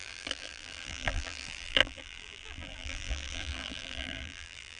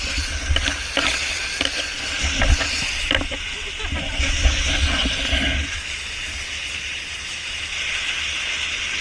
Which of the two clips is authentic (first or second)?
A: second